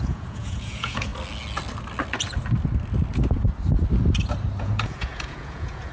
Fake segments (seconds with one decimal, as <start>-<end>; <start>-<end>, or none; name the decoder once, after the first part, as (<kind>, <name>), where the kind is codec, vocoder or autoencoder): 0.0-1.1 (vocoder, Vocos); 4.6-5.9